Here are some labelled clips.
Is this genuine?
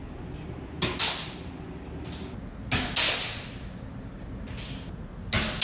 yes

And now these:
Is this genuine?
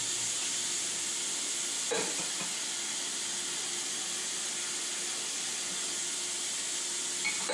yes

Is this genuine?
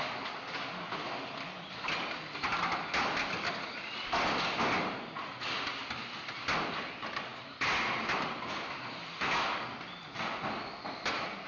yes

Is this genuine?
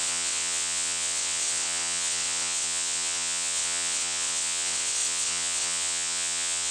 no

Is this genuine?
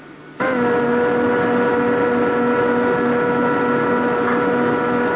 yes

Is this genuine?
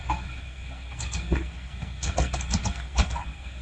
no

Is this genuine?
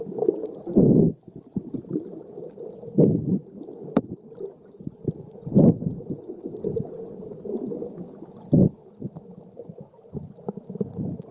yes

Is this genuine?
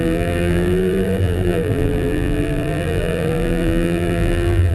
no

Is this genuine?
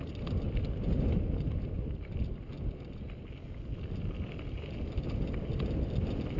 yes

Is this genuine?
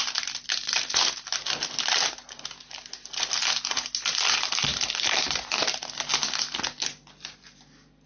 yes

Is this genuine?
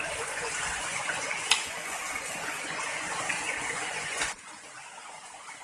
no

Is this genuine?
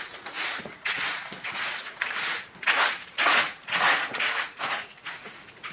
no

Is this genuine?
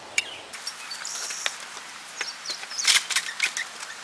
no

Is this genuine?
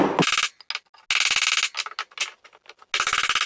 yes